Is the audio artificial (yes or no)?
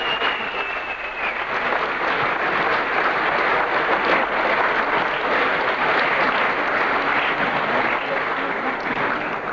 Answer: no